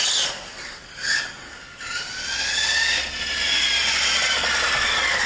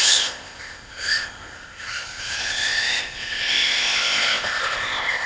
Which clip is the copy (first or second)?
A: second